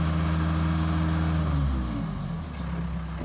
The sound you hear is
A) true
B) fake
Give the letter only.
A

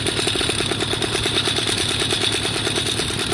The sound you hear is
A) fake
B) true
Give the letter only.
B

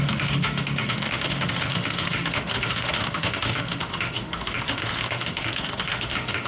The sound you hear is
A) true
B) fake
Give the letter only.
B